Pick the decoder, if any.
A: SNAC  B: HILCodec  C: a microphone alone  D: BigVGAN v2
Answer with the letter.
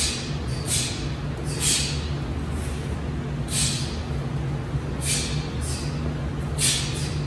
C